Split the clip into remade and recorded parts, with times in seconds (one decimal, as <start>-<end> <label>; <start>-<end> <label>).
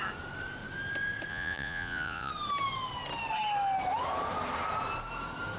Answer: 0.0-1.3 recorded; 1.3-2.3 remade; 2.3-5.6 recorded